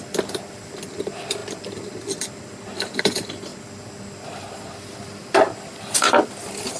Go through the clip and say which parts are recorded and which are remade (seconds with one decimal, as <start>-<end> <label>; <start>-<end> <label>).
0.0-6.8 recorded